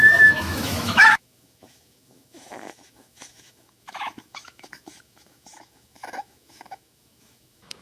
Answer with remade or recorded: remade